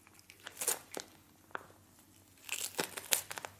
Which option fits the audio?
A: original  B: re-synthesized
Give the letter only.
A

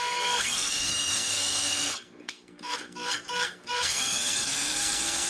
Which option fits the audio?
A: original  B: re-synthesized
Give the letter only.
B